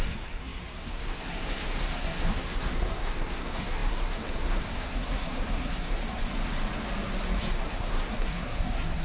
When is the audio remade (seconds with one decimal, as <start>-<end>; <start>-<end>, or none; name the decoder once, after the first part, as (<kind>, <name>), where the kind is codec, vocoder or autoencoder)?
0.0-6.0 (codec, SNAC); 7.6-9.0